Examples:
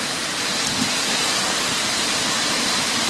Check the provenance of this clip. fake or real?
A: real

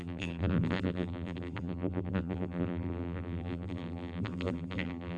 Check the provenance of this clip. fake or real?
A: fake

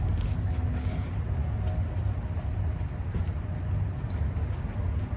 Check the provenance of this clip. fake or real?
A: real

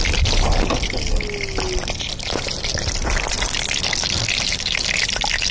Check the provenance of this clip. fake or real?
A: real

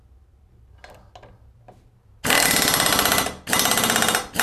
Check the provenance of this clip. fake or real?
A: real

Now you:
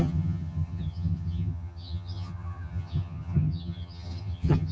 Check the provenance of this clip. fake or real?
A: fake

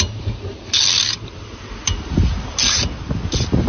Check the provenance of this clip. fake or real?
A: real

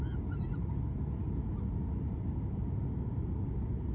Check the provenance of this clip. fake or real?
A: real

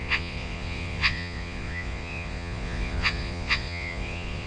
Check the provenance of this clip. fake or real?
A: fake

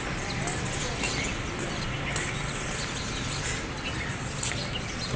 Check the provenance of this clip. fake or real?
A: real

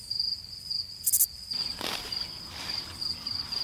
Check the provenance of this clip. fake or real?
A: real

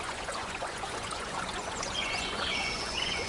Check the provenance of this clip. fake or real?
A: fake